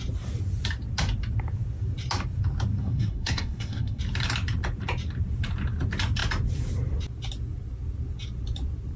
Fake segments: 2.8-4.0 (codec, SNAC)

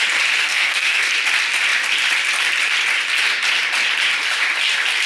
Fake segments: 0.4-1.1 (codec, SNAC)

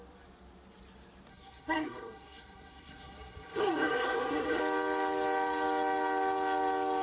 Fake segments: 1.3-4.6 (codec, SNAC)

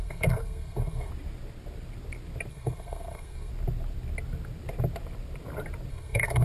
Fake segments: 0.0-1.1 (codec, SNAC); 2.5-3.5; 5.9-6.4

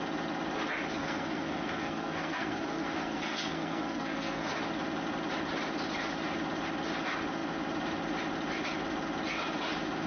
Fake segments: 1.0-4.6 (codec, SNAC)

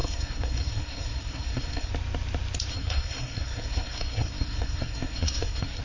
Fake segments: 0.0-1.9 (codec, SNAC); 2.7-5.8

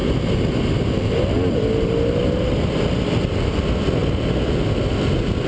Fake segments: none